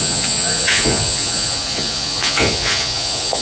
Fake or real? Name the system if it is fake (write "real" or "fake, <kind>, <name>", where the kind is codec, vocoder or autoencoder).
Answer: fake, vocoder, Vocos